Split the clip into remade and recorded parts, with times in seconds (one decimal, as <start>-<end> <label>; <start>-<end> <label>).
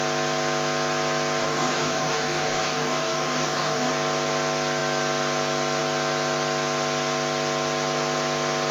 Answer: 0.0-1.4 recorded; 1.4-3.9 remade; 3.9-8.7 recorded